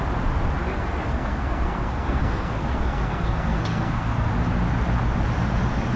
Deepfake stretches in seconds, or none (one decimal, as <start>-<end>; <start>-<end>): 0.7-4.3